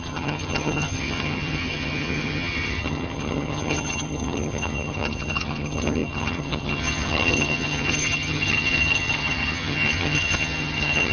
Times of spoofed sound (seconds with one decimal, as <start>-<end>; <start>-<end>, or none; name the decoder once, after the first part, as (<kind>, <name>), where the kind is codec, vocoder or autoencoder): 0.0-11.1 (vocoder, HiFi-GAN)